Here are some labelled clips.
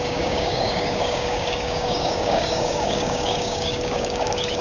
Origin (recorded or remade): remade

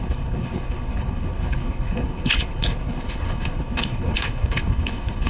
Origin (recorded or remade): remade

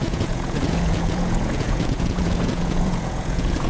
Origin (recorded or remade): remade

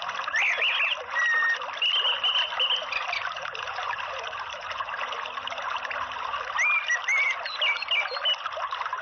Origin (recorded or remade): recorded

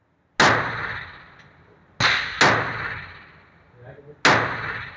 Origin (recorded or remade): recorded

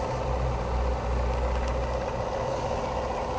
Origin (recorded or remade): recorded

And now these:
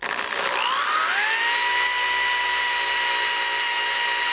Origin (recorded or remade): recorded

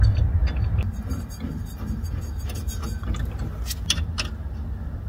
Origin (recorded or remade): recorded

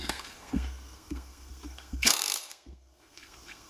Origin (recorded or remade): remade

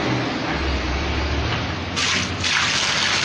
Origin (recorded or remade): recorded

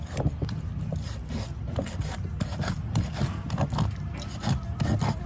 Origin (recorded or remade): recorded